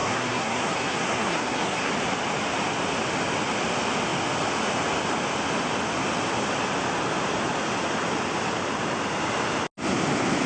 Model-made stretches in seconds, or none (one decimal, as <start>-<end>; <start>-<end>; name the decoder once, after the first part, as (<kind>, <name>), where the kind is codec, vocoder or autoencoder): 0.0-1.9 (codec, SNAC)

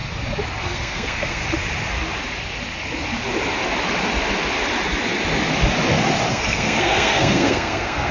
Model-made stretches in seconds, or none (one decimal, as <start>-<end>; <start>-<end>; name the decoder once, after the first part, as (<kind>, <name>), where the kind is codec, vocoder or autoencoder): 0.6-1.4 (codec, SNAC); 6.3-8.1

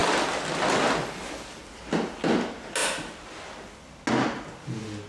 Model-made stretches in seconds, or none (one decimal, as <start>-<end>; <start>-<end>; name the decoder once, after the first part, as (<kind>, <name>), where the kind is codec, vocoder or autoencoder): none

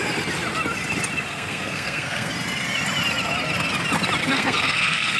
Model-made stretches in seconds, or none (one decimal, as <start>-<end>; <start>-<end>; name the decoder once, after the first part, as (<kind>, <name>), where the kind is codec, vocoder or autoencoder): 1.3-2.3 (codec, SNAC); 4.2-5.2

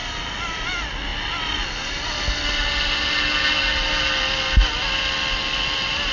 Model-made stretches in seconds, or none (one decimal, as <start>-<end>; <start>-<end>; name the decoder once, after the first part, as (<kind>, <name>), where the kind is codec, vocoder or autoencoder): none